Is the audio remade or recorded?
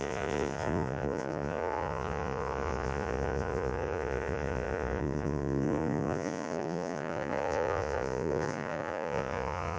remade